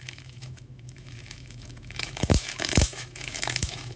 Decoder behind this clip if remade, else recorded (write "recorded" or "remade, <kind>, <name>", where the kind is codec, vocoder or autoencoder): remade, autoencoder, DAC-VAE